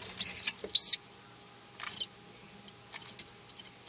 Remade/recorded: recorded